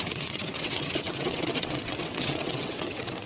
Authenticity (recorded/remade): remade